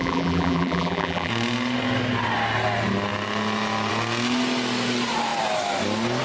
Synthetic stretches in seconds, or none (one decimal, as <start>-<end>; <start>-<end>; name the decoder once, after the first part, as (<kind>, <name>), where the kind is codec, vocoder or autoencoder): 0.0-1.3 (vocoder, BigVGAN v2)